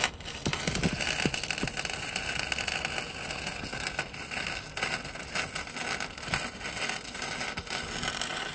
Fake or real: real